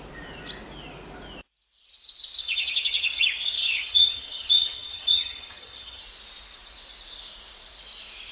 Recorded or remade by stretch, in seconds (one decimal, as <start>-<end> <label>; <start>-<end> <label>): 0.0-2.4 recorded; 2.4-6.0 remade; 6.0-8.3 recorded